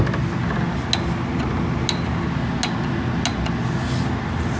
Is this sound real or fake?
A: real